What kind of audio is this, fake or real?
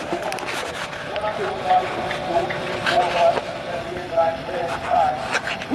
real